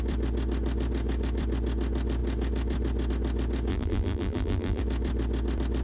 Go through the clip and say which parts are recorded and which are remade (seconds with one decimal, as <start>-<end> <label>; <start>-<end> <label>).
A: 0.0-3.7 recorded; 3.7-4.8 remade; 4.8-5.8 recorded